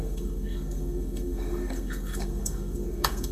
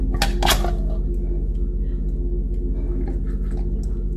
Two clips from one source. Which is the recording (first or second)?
second